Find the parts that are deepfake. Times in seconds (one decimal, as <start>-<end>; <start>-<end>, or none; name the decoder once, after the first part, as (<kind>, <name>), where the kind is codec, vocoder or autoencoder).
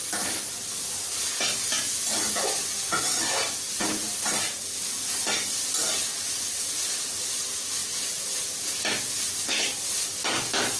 none